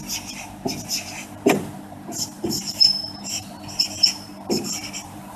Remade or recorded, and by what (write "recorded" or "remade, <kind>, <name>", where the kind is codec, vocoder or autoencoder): remade, vocoder, BigVGAN v2